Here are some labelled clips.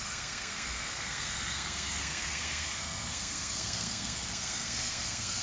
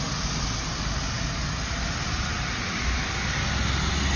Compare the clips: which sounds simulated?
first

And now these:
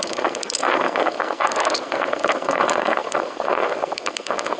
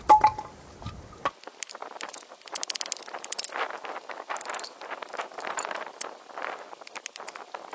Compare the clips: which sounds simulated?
first